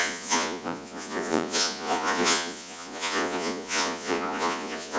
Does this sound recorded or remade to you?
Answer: remade